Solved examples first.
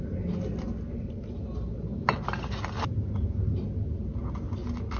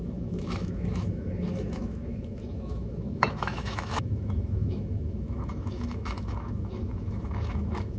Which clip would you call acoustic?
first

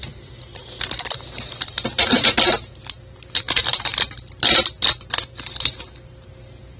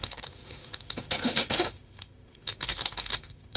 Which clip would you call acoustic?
first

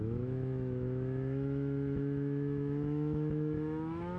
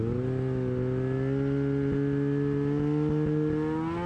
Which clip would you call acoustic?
second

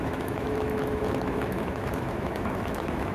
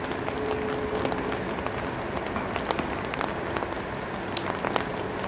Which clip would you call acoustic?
second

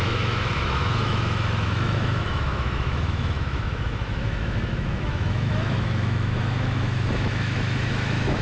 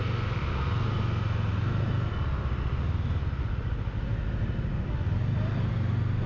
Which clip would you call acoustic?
second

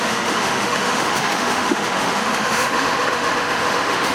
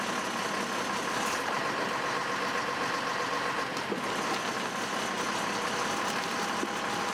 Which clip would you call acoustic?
second